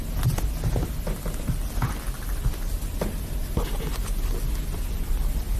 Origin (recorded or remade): recorded